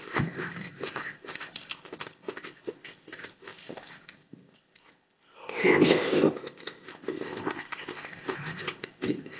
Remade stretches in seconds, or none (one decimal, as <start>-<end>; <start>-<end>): 0.0-9.4